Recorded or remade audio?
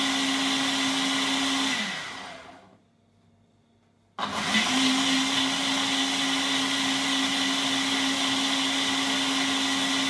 recorded